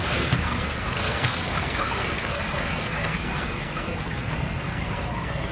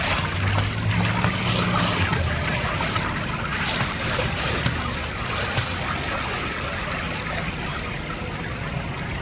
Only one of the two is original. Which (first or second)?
second